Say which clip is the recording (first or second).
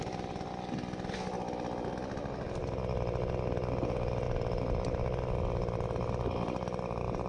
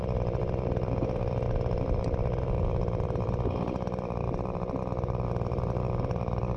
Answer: first